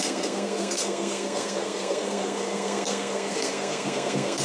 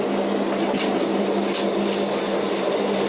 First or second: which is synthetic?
first